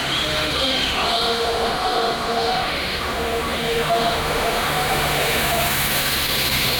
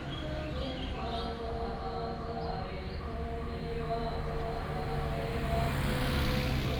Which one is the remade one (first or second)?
first